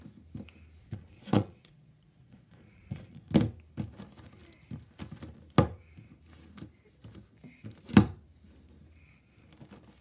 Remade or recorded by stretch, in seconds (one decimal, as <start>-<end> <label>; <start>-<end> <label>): 0.0-0.8 recorded; 0.8-3.3 remade; 3.3-10.0 recorded